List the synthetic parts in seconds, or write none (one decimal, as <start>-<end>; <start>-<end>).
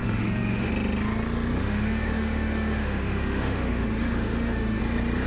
0.0-0.7; 1.6-4.8